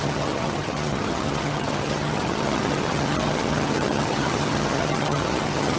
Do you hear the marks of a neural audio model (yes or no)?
yes